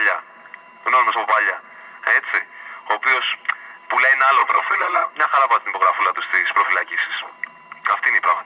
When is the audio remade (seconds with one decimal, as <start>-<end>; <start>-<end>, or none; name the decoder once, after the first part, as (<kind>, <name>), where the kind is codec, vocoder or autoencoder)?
4.4-5.1 (vocoder, HiFi-GAN)